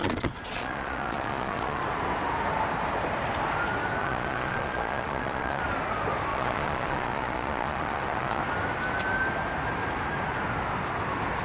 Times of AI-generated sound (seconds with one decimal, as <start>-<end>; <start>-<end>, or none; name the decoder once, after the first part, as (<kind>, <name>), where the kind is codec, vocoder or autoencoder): 0.0-1.8 (vocoder, Vocos); 4.0-5.6; 6.3-8.4